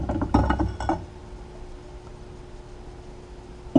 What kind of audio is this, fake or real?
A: real